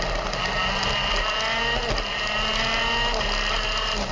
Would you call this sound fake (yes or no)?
no